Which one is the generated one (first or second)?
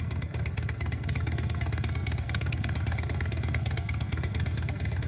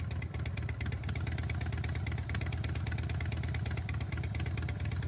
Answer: first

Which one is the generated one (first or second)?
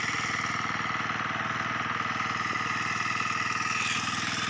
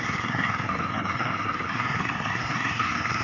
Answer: second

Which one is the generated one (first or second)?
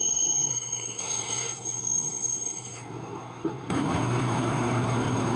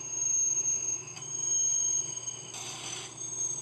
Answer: first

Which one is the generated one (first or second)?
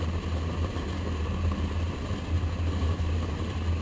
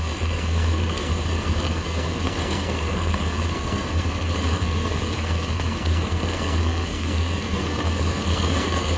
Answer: second